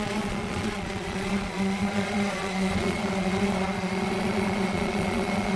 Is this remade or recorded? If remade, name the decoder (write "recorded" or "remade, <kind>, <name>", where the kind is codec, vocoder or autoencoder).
remade, vocoder, Vocos